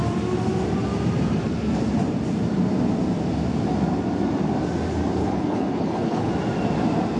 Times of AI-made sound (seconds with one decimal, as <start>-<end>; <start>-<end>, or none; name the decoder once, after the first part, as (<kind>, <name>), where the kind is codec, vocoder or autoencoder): 5.2-6.3 (codec, HILCodec)